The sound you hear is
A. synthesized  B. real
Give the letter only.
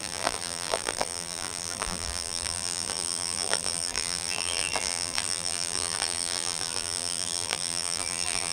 A